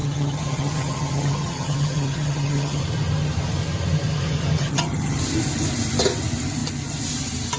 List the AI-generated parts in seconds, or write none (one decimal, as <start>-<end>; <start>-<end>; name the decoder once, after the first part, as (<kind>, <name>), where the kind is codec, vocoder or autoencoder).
0.0-2.8 (vocoder, HiFi-GAN); 4.6-5.2

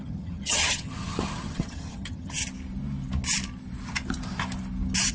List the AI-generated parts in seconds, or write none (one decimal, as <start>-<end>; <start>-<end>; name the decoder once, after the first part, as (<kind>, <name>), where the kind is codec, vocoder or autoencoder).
0.0-2.4 (vocoder, HiFi-GAN)

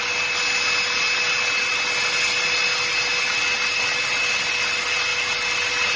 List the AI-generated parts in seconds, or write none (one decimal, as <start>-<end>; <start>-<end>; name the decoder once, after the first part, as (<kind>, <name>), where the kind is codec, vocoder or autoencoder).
none

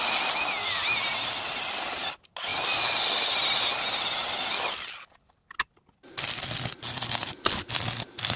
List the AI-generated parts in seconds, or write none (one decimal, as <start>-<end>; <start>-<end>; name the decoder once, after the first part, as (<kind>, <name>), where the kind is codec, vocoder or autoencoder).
none

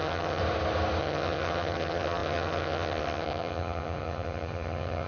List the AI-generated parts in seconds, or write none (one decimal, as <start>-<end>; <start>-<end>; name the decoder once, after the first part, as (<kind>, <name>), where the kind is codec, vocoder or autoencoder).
0.0-0.4 (vocoder, HiFi-GAN); 1.0-5.1

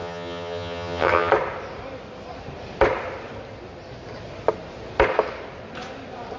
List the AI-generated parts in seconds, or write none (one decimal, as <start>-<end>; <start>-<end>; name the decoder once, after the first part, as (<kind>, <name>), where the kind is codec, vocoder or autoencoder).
0.0-1.3 (vocoder, HiFi-GAN)